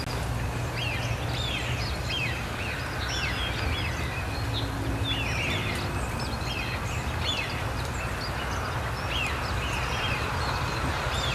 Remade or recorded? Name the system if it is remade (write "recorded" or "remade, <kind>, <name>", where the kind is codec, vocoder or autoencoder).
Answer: recorded